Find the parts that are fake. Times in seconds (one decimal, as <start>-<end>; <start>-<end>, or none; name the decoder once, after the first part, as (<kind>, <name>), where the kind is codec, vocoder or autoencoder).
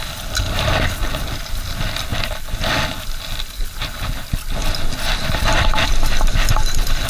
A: none